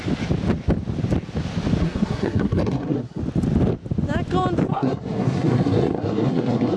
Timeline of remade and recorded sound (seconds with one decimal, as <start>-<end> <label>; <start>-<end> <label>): 0.0-1.8 recorded; 1.8-3.2 remade; 3.2-4.7 recorded; 4.7-6.8 remade